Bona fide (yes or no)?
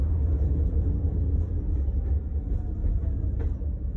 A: yes